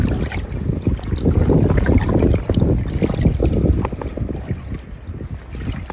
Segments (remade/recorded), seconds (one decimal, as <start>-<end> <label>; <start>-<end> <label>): 0.0-5.9 recorded